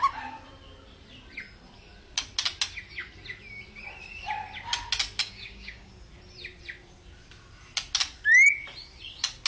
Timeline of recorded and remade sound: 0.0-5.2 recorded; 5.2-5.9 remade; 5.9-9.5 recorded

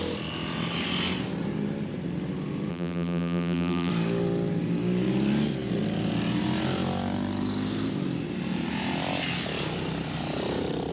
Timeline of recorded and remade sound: 0.0-2.7 recorded; 2.7-3.9 remade; 3.9-10.9 recorded

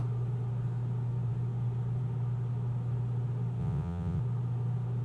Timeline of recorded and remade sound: 0.0-3.6 recorded; 3.6-4.2 remade; 4.2-5.0 recorded

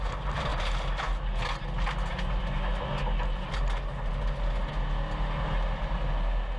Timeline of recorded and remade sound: 0.0-6.6 recorded